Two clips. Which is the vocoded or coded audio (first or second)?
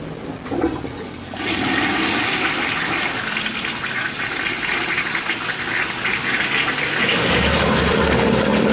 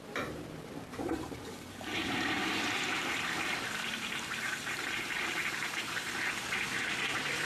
second